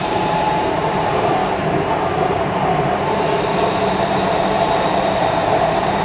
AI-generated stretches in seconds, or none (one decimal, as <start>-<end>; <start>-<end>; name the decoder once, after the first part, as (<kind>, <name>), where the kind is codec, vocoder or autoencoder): 0.0-1.4 (vocoder, BigVGAN v2); 2.2-4.3; 5.0-6.0